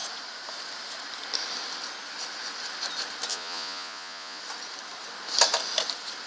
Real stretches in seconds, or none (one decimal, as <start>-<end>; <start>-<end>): 0.0-3.3; 4.4-6.3